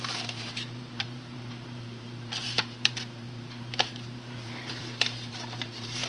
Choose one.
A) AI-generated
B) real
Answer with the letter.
A